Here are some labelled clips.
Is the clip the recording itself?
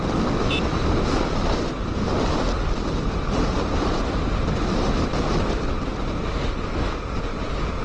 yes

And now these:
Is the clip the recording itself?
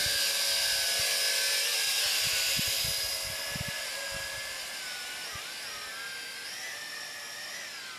yes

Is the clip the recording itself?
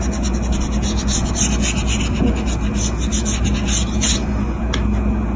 yes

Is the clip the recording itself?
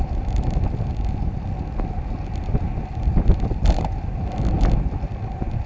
yes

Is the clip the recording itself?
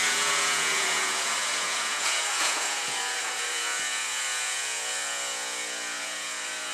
no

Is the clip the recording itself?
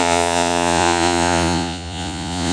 no